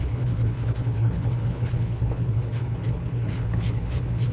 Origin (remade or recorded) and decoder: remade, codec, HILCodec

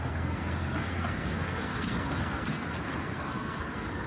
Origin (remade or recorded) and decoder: remade, codec, SNAC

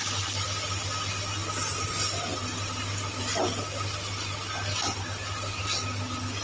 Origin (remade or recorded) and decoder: recorded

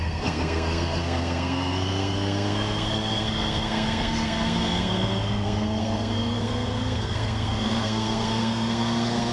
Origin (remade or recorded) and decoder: remade, codec, SNAC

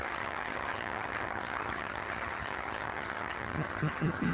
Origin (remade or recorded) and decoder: remade, vocoder, HiFi-GAN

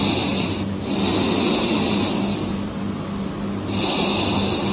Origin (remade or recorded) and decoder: remade, vocoder, BigVGAN v2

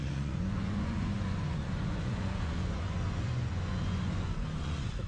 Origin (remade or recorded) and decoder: remade, vocoder, Vocos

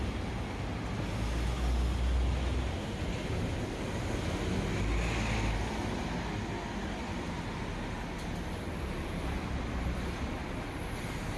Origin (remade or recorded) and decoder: recorded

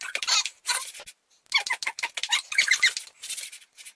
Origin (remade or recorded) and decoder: recorded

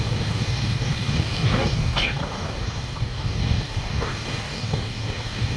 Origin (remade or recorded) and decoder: remade, codec, DAC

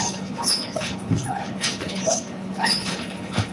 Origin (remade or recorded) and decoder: remade, codec, HILCodec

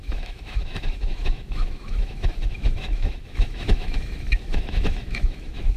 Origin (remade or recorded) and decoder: remade, autoencoder, DAC-VAE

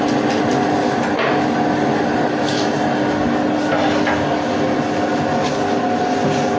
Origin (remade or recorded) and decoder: recorded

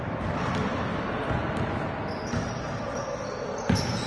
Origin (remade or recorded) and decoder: recorded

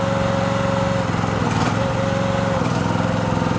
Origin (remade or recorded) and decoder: recorded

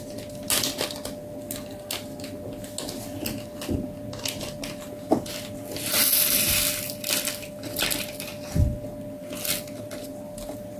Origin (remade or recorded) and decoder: recorded